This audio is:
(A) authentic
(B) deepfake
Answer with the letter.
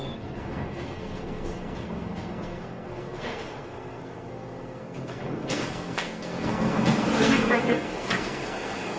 B